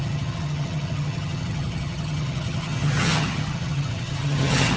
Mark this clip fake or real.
fake